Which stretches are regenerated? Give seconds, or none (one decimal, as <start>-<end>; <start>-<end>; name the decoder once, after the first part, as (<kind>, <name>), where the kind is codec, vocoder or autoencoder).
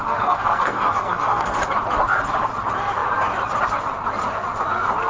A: 0.0-1.6 (codec, SNAC)